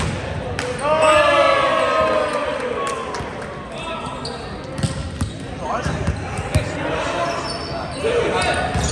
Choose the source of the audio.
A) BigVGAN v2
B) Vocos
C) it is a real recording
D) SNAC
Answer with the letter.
C